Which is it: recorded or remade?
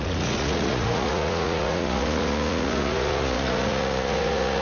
remade